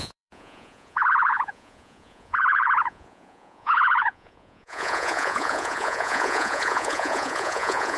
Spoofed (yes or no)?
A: yes